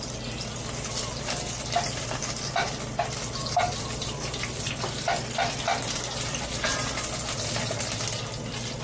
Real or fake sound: real